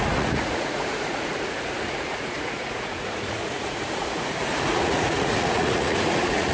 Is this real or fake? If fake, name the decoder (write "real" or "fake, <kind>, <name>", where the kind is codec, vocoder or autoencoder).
fake, vocoder, Vocos